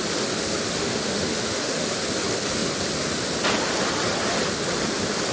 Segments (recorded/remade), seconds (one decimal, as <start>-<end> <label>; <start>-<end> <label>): 0.0-0.7 recorded; 0.7-1.9 remade; 1.9-5.3 recorded